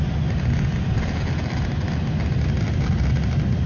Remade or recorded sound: recorded